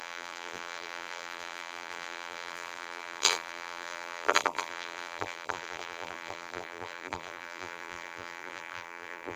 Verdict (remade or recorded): remade